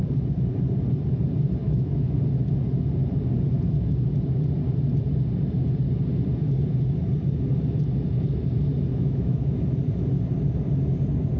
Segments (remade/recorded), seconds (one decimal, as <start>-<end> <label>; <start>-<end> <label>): 0.0-1.6 recorded; 1.6-2.2 remade; 2.2-8.9 recorded; 8.9-9.6 remade; 9.6-11.4 recorded